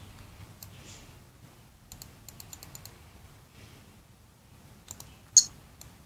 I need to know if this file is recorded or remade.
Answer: recorded